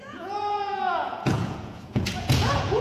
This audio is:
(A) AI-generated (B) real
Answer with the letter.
A